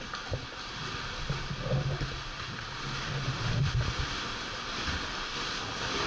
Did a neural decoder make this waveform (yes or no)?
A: no